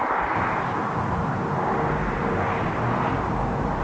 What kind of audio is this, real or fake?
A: real